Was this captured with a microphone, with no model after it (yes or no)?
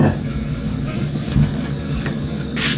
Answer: no